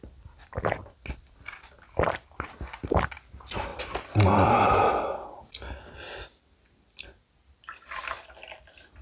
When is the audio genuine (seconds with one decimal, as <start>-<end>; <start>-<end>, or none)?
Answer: 0.0-9.0